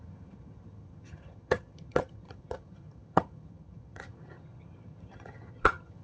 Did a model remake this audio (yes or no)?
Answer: yes